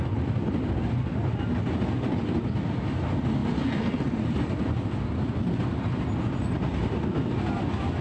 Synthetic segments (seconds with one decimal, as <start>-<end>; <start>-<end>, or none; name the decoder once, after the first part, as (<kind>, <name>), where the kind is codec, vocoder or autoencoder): none